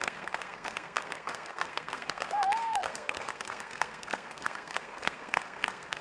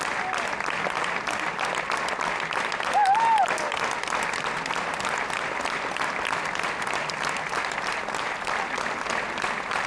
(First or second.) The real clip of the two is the second